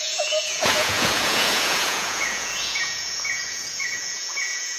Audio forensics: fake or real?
fake